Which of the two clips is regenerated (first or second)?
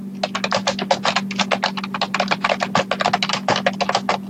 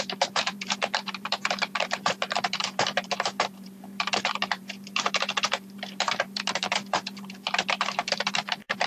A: second